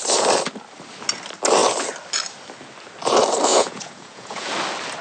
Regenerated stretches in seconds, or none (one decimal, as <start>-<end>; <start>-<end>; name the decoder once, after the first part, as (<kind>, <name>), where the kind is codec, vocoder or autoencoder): 3.5-4.5 (vocoder, Vocos)